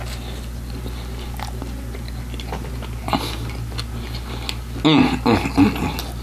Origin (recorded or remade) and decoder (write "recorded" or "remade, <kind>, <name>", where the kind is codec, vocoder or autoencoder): recorded